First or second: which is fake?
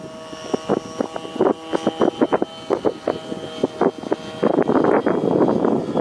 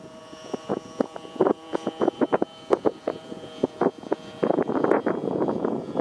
second